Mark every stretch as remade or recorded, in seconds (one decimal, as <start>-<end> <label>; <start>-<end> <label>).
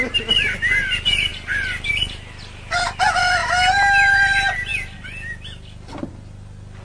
0.0-6.8 recorded